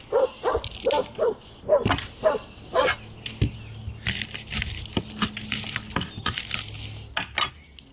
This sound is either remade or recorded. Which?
recorded